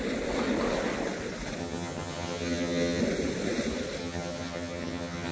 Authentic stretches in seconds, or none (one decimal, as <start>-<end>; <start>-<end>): 0.0-1.6; 3.0-4.0